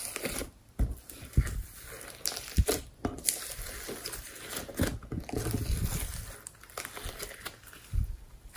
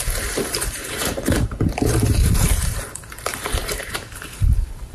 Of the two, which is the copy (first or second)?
second